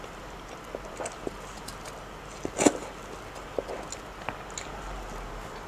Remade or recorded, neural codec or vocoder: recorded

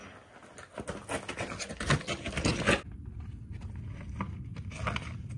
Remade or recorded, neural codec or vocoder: recorded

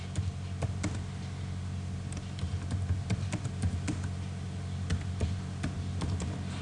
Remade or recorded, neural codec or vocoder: recorded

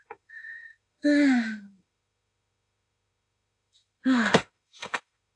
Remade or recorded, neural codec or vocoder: remade, autoencoder, DAC-VAE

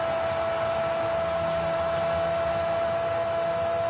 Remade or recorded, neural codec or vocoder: recorded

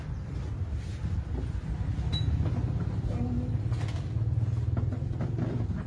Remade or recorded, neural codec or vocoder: recorded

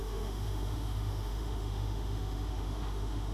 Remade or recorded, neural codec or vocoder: remade, autoencoder, DAC-VAE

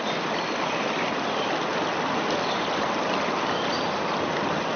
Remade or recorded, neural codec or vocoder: recorded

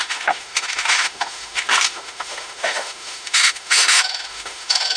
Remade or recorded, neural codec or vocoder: remade, autoencoder, DAC-VAE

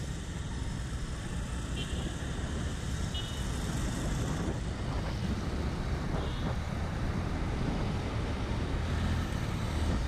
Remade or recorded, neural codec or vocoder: recorded